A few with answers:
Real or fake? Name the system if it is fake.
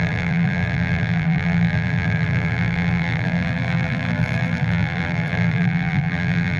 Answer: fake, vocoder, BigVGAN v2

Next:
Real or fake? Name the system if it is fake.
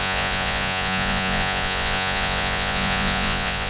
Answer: fake, vocoder, Vocos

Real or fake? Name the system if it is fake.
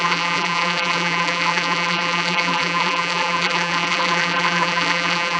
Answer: fake, vocoder, BigVGAN v2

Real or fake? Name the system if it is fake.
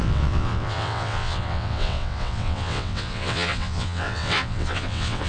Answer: fake, vocoder, WaveNeXt